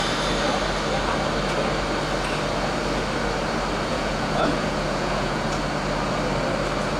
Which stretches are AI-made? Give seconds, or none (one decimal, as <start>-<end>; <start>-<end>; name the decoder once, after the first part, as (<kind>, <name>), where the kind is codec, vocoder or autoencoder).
3.9-5.5 (vocoder, Vocos)